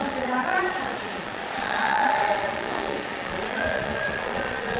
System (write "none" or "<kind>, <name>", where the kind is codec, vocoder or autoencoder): vocoder, Vocos